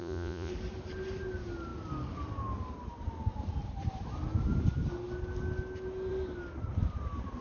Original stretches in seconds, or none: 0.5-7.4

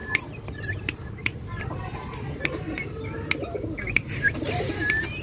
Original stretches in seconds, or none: 1.6-5.2